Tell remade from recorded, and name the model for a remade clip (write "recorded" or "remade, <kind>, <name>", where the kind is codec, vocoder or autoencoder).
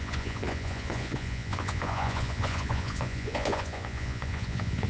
remade, vocoder, Vocos